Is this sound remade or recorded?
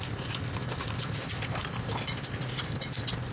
recorded